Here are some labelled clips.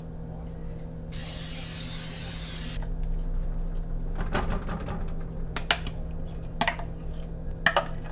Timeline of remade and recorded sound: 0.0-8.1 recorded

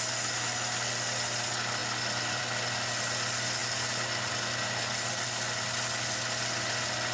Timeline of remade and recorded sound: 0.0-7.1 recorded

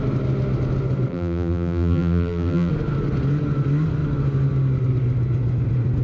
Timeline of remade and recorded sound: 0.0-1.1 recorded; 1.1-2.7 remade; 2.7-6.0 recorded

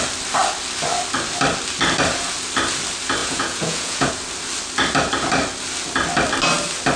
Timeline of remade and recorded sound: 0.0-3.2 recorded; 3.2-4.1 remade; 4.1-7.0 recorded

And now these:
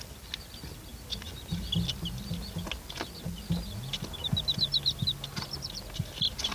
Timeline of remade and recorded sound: 0.0-6.5 recorded

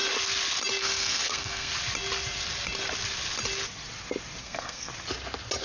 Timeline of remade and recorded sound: 0.0-0.8 recorded; 0.8-1.7 remade; 1.7-4.4 recorded; 4.4-4.9 remade; 4.9-5.6 recorded